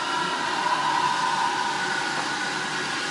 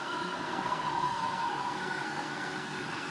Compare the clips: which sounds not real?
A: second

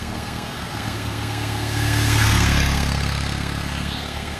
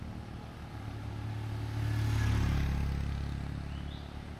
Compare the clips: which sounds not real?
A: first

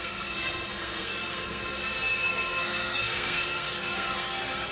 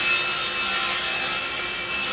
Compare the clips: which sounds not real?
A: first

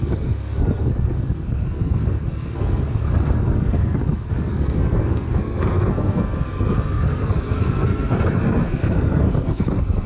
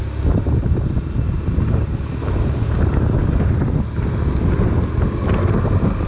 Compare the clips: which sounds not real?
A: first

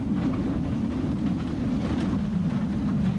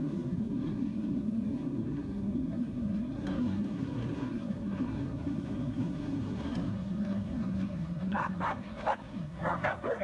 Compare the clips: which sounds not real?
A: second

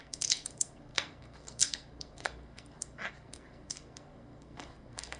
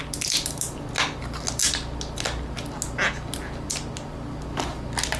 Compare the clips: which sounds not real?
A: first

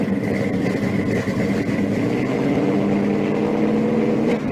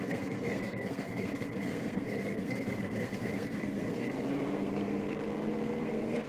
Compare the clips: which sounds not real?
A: second